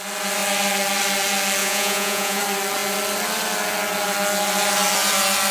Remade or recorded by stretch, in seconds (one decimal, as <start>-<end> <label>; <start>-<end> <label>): 0.0-1.6 recorded; 1.6-2.4 remade; 2.4-5.5 recorded